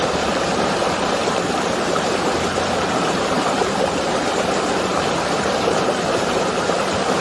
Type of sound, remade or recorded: remade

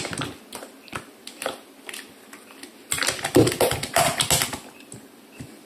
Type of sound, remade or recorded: recorded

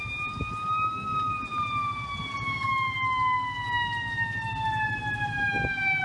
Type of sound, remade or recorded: recorded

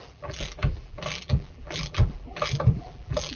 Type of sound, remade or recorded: remade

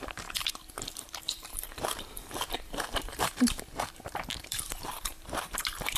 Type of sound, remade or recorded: remade